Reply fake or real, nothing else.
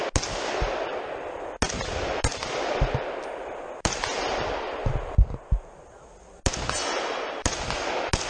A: real